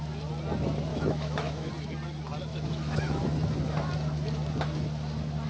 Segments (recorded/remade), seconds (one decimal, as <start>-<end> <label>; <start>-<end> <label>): 0.0-0.9 recorded; 0.9-1.7 remade; 1.7-2.5 recorded; 2.5-3.2 remade; 3.2-5.5 recorded